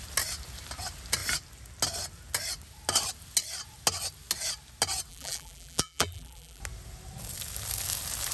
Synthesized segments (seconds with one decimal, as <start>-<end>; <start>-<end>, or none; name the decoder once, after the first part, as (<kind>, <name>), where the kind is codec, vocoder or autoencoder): 5.1-6.6 (vocoder, BigVGAN v2)